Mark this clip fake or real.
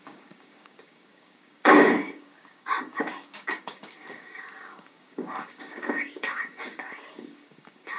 fake